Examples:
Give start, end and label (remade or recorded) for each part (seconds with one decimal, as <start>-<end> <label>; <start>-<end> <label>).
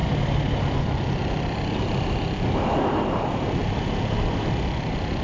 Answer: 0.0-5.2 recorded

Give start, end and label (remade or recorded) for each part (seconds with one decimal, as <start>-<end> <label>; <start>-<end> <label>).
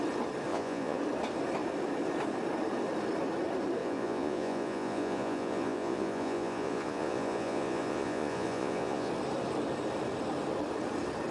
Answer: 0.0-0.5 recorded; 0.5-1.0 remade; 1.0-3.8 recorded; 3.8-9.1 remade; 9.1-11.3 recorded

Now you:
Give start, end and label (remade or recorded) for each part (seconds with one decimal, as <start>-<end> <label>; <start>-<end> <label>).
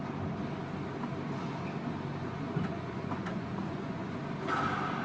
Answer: 0.0-2.2 recorded; 2.2-4.2 remade; 4.2-5.0 recorded